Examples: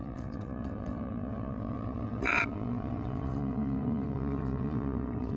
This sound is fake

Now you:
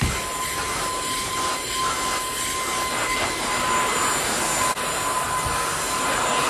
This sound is real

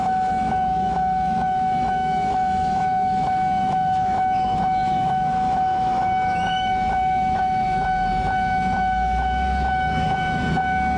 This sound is fake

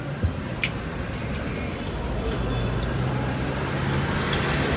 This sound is fake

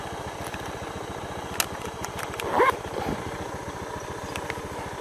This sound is real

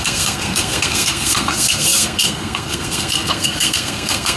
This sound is fake